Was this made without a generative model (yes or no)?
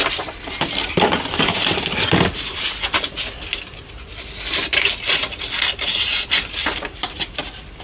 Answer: yes